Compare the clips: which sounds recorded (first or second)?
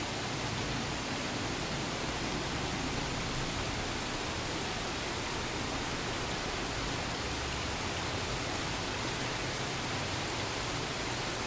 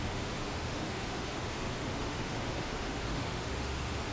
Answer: first